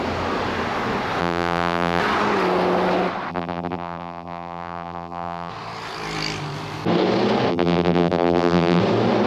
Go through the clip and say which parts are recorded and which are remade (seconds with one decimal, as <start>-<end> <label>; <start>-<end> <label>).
0.0-1.2 recorded; 1.2-2.0 remade; 2.0-3.3 recorded; 3.3-5.5 remade; 5.5-7.5 recorded; 7.5-8.8 remade; 8.8-9.3 recorded

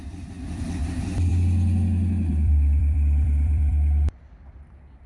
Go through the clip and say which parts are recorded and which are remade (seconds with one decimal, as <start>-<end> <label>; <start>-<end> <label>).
0.0-1.3 remade; 1.3-2.3 recorded; 2.3-5.1 remade